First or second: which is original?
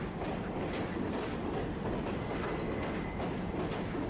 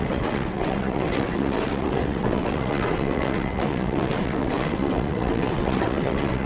first